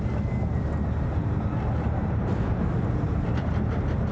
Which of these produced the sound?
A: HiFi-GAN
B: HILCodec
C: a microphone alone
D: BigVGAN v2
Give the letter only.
C